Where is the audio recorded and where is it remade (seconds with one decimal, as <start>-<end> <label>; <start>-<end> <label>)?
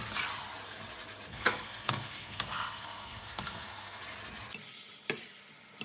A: 0.0-1.3 recorded; 1.3-4.0 remade; 4.0-5.8 recorded